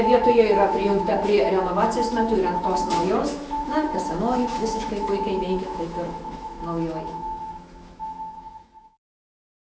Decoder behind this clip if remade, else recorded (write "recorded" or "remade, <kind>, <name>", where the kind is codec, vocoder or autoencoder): remade, autoencoder, DAC-VAE